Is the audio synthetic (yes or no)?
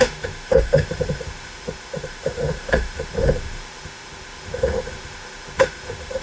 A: yes